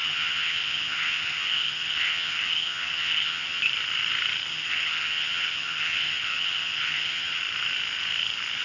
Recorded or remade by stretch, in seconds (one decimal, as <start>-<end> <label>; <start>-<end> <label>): 0.0-3.6 remade; 3.6-4.5 recorded; 4.5-7.4 remade; 7.4-8.6 recorded